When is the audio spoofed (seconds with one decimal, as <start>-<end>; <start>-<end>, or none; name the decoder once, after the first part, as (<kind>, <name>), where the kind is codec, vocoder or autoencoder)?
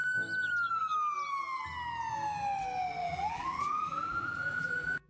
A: 3.0-5.1 (vocoder, BigVGAN v2)